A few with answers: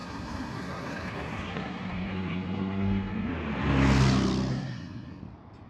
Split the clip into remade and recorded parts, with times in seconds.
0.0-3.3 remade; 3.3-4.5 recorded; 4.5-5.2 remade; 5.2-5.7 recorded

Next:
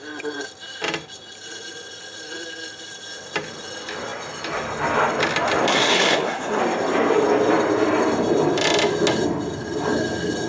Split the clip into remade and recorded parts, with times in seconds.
0.0-5.7 recorded; 5.7-6.6 remade; 6.6-10.5 recorded

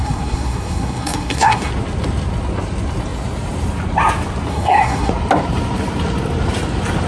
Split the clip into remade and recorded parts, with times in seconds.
0.0-1.7 remade; 1.7-4.5 recorded; 4.5-5.1 remade; 5.1-7.1 recorded

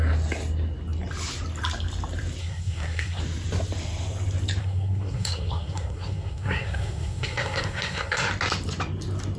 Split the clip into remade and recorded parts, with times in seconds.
0.0-2.4 recorded; 2.4-3.2 remade; 3.2-4.6 recorded; 4.6-8.3 remade; 8.3-9.4 recorded

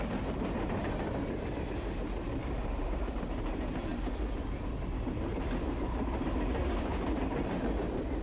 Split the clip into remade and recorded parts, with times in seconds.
0.0-8.2 recorded

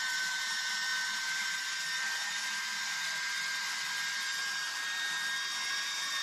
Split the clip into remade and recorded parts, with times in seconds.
0.0-6.2 recorded

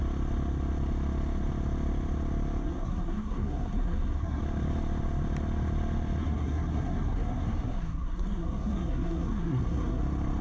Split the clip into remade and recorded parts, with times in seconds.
0.0-2.6 recorded; 2.6-4.4 remade; 4.4-6.2 recorded; 6.2-10.0 remade; 10.0-10.4 recorded